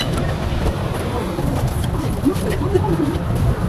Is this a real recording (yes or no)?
no